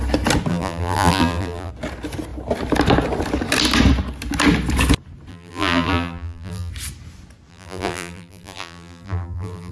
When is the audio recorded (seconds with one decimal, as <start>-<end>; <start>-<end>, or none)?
0.0-0.5; 1.7-5.3; 6.7-7.5